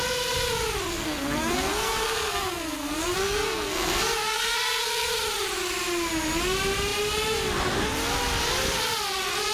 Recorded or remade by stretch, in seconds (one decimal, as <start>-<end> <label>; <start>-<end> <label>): 0.0-0.9 recorded; 0.9-5.1 remade; 5.1-9.5 recorded